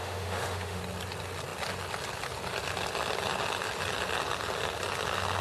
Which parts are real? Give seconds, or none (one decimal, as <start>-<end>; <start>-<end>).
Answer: 0.8-5.4